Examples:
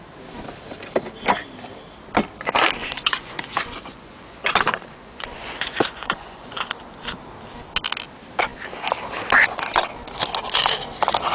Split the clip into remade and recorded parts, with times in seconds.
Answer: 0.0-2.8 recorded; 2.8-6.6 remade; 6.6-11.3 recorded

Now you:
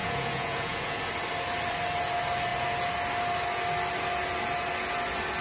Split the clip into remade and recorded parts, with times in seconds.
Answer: 0.0-1.0 remade; 1.0-5.4 recorded

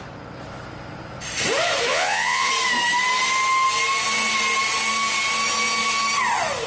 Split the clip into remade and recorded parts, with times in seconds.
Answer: 0.0-1.9 recorded; 1.9-2.5 remade; 2.5-6.7 recorded

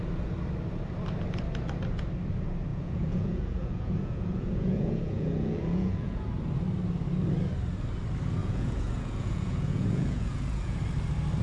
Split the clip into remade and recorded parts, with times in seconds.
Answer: 0.0-2.7 recorded; 2.7-6.3 remade; 6.3-8.4 recorded; 8.4-10.8 remade; 10.8-11.4 recorded

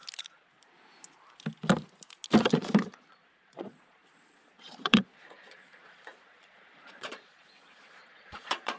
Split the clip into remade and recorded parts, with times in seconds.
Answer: 0.0-2.4 recorded; 2.4-8.8 remade